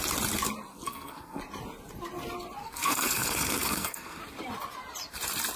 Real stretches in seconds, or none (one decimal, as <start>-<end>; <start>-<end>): 0.0-0.7; 1.4-2.6; 4.2-5.6

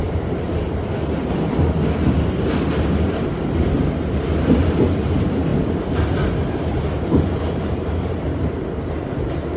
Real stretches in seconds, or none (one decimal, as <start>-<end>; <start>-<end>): 0.0-9.6

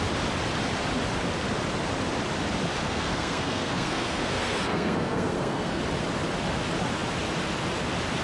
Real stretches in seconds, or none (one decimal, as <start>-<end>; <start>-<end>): 0.0-2.8; 5.8-8.2

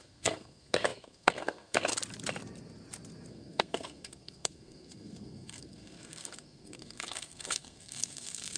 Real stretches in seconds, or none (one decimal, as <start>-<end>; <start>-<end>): 1.9-3.3

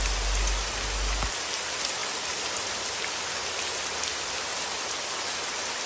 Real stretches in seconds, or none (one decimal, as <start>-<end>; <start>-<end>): 0.0-5.9

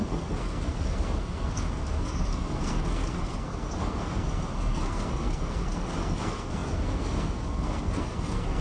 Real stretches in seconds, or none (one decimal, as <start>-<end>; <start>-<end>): none

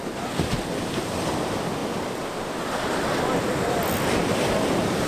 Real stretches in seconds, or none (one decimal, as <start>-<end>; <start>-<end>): 0.0-5.1